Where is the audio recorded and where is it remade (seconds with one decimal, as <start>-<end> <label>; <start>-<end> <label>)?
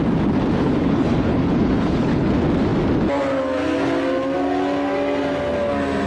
0.0-0.6 recorded; 0.6-2.3 remade; 2.3-6.1 recorded